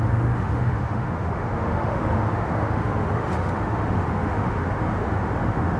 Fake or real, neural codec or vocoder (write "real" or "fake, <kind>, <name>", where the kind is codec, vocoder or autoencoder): fake, autoencoder, DAC-VAE